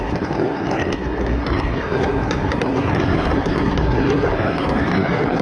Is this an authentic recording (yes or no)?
no